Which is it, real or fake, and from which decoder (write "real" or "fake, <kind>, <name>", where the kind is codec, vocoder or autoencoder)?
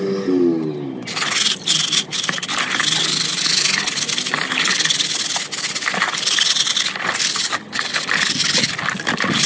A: real